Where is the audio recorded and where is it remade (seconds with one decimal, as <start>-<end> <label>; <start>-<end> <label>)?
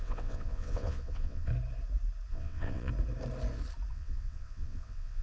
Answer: 0.0-1.5 remade; 1.5-2.3 recorded; 2.3-2.9 remade; 2.9-3.9 recorded; 3.9-5.2 remade